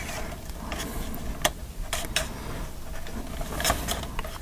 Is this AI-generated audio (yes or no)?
no